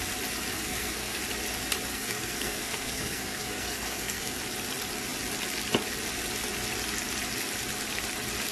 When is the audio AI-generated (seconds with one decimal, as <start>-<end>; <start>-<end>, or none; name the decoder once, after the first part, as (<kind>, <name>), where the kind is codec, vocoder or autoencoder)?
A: 0.5-1.2 (codec, SNAC); 1.9-4.4